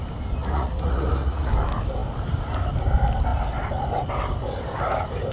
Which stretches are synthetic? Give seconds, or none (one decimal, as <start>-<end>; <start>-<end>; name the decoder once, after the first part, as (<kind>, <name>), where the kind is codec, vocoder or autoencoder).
0.4-1.5 (vocoder, Vocos)